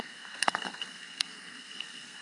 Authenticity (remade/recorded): remade